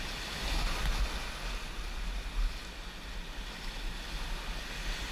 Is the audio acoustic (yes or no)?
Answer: yes